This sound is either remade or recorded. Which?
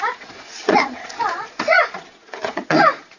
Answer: remade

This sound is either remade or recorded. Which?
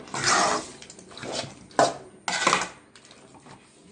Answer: recorded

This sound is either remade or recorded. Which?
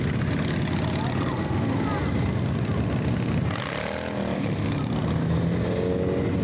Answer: recorded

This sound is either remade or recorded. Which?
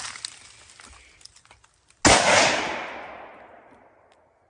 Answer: recorded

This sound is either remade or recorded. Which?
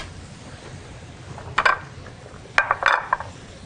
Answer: recorded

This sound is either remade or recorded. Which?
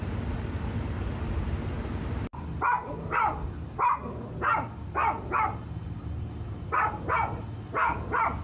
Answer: recorded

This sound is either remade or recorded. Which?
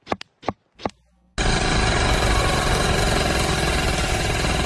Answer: recorded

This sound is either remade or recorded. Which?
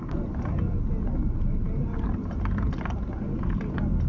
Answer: recorded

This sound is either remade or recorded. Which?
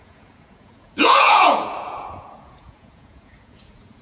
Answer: remade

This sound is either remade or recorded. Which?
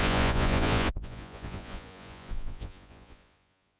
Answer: remade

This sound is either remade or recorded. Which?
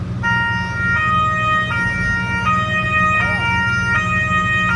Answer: recorded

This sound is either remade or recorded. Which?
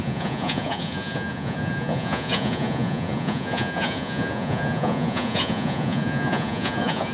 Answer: remade